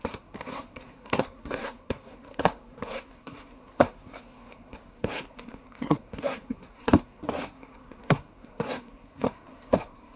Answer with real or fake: fake